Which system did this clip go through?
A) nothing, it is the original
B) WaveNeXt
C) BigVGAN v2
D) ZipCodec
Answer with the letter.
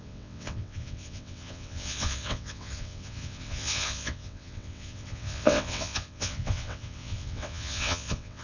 B